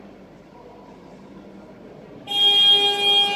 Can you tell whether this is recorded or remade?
recorded